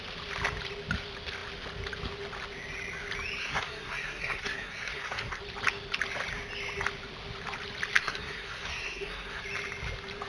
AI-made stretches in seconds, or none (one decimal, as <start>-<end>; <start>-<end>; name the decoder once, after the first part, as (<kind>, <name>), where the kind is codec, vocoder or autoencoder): 3.4-5.4 (codec, SNAC); 8.0-9.4